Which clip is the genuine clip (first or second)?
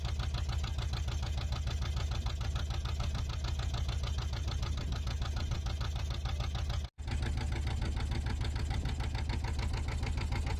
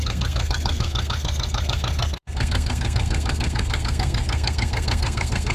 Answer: first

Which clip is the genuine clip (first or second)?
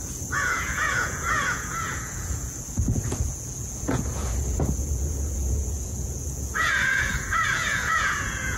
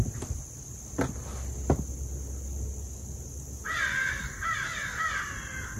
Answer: second